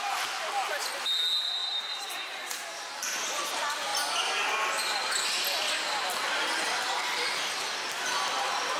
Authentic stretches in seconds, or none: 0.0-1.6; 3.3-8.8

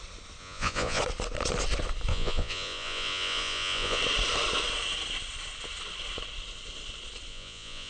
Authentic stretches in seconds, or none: 0.0-0.4; 1.0-2.1; 4.0-7.3

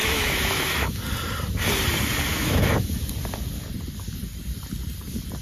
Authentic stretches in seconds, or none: 1.0-2.3; 3.0-5.4

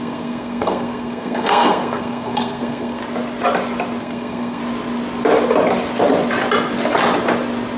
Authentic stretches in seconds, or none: 3.0-4.0; 4.6-7.8

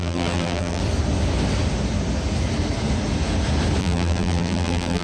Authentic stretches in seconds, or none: 0.8-3.8

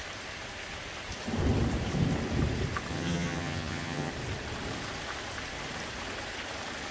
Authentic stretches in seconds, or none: 0.0-2.9; 4.1-6.9